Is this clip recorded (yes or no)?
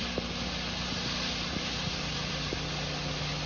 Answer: yes